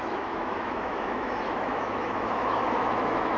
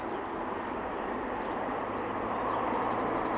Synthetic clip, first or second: first